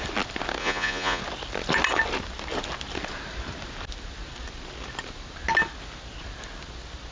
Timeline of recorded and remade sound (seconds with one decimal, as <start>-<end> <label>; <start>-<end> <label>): 0.0-0.6 recorded; 0.6-1.2 remade; 1.2-7.1 recorded